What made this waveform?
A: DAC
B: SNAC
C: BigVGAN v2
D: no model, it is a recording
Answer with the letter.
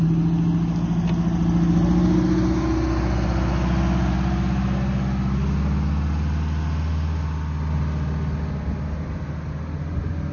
D